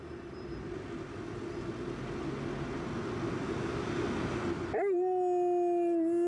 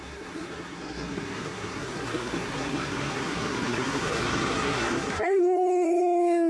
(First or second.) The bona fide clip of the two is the first